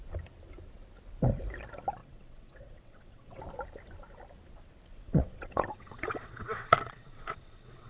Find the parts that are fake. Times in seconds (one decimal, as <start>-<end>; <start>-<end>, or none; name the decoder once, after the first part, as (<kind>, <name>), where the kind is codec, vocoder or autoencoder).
2.0-3.4 (vocoder, WaveNeXt); 4.9-7.9